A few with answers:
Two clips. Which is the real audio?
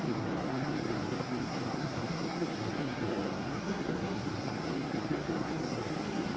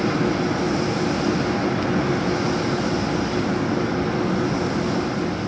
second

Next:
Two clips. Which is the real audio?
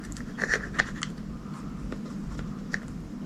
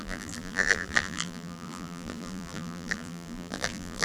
first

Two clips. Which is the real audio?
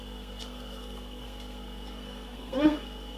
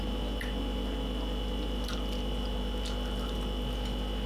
second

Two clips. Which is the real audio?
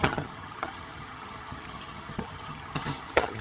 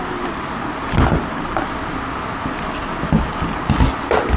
second